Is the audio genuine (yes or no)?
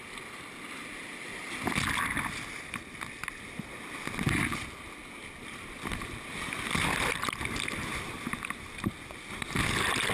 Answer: yes